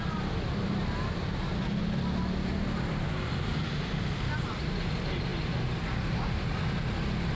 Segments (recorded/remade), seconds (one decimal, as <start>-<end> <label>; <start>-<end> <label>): 0.0-7.3 recorded